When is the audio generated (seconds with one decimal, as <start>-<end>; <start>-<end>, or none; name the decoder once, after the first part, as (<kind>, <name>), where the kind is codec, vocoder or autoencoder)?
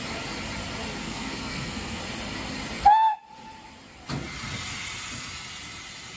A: 1.0-2.0 (codec, SNAC)